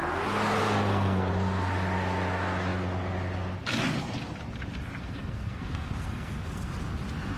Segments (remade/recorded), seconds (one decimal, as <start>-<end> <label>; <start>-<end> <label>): 0.0-0.6 recorded; 0.6-1.3 remade; 1.3-5.0 recorded; 5.0-6.7 remade; 6.7-7.4 recorded